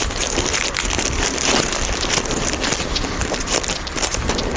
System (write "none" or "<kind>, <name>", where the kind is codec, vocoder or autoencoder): vocoder, BigVGAN v2